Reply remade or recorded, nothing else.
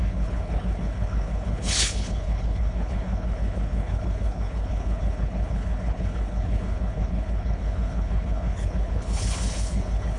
remade